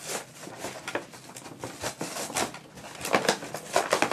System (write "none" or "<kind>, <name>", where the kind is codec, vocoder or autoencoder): none